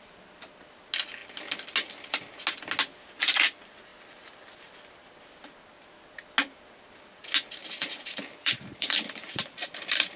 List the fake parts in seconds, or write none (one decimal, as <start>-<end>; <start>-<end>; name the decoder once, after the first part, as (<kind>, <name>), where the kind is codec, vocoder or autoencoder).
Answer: 7.6-10.2 (vocoder, BigVGAN v2)